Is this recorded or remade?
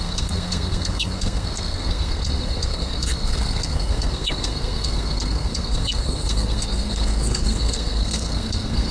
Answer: remade